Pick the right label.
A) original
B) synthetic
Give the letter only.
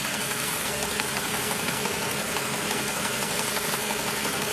B